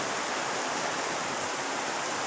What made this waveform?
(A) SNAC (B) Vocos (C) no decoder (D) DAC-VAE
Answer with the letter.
C